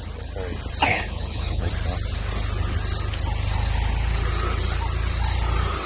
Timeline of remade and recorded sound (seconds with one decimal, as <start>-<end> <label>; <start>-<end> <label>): 0.0-0.9 recorded; 0.9-1.7 remade; 1.7-5.9 recorded